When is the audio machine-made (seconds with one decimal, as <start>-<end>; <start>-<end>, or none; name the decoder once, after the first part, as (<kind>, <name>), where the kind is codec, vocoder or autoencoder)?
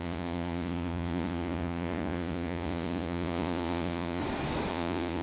0.0-4.2 (vocoder, Vocos); 4.7-5.2